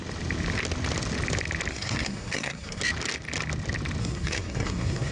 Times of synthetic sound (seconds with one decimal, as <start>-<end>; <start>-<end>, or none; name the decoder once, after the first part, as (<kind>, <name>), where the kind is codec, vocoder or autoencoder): 1.7-2.8 (codec, SNAC); 4.0-5.1